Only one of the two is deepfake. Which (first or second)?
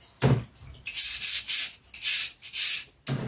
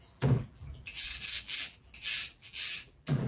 second